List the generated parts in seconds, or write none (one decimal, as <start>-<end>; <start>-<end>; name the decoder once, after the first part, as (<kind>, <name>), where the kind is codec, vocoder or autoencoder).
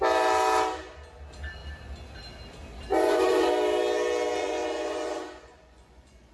2.9-3.5 (vocoder, Vocos); 4.4-6.3